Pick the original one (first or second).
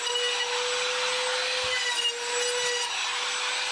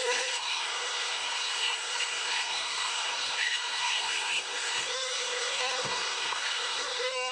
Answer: first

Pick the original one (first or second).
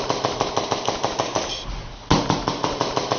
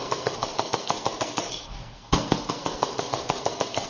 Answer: first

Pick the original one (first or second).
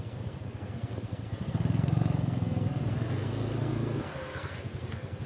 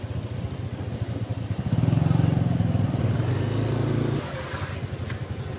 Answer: second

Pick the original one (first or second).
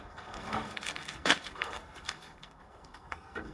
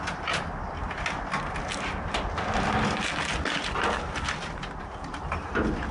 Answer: second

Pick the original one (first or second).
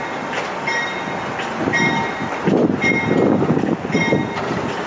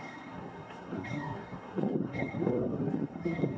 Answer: first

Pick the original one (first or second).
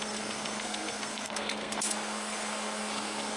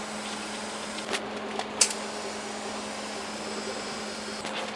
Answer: second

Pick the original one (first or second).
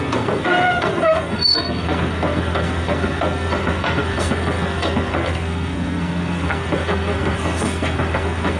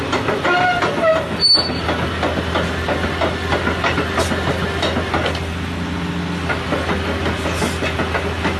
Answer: second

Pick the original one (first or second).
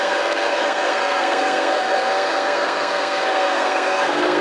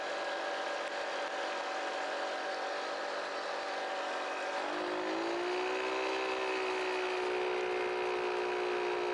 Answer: second